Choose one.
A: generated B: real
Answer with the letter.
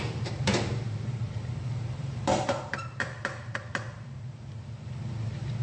A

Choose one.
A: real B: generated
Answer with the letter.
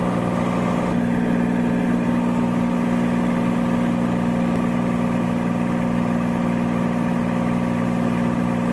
A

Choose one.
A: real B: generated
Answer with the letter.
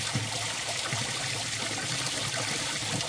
A